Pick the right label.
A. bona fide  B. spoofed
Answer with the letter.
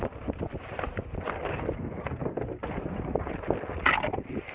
A